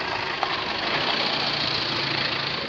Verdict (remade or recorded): recorded